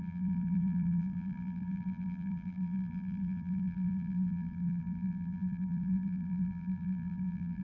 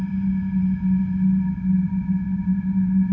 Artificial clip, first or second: first